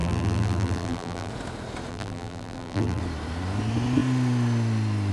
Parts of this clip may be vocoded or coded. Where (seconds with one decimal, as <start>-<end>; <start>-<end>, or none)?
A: 0.0-1.3; 1.9-3.0